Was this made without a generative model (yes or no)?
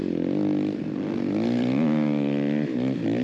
no